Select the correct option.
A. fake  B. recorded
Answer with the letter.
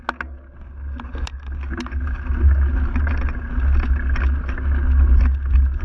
B